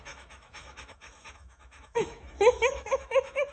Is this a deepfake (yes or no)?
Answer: yes